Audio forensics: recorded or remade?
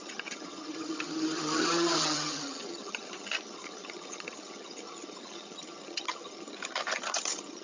remade